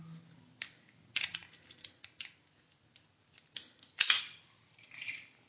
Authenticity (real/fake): fake